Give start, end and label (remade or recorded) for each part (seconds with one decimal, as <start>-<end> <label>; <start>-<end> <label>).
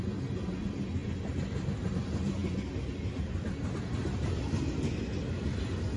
0.0-6.0 recorded